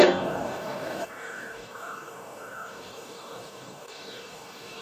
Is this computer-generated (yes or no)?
yes